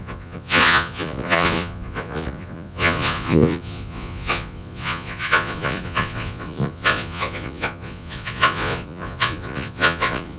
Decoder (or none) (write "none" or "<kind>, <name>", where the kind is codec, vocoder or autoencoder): vocoder, Vocos